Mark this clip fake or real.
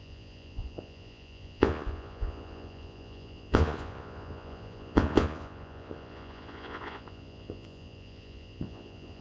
fake